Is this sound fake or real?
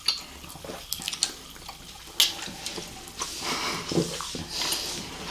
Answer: real